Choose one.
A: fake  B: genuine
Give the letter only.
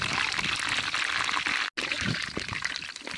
B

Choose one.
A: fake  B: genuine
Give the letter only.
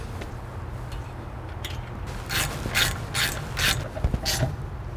B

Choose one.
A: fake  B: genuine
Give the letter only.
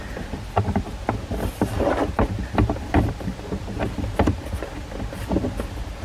B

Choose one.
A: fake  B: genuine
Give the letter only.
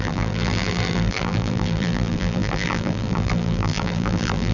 A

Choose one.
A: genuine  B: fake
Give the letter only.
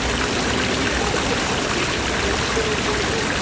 A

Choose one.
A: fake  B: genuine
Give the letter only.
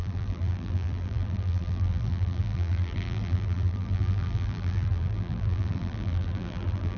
A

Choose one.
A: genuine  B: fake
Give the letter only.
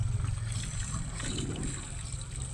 B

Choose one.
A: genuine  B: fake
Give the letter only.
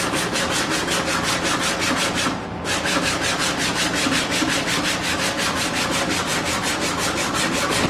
B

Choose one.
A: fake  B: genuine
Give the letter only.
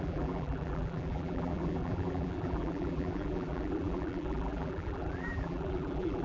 A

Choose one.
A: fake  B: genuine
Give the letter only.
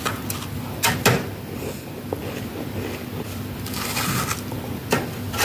B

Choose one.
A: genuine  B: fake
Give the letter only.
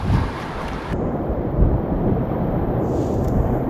B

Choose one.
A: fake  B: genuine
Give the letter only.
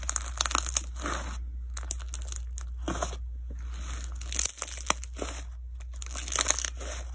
B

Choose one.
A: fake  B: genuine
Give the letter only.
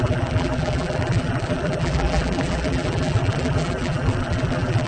A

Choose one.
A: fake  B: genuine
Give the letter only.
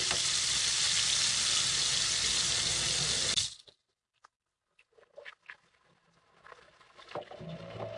B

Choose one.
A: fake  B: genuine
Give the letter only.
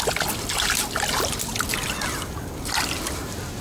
B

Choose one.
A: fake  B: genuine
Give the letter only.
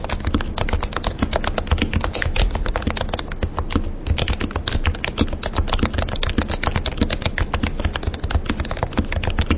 B